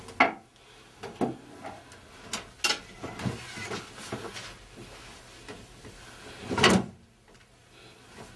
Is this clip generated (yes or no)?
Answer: no